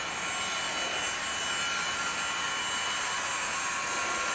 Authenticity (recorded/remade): recorded